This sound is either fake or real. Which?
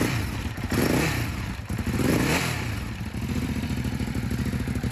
fake